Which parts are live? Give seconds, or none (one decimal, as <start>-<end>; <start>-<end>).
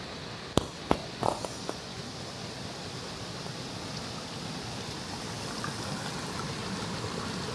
0.0-1.0; 2.0-7.5